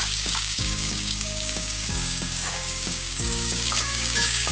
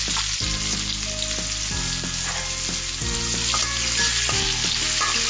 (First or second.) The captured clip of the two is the second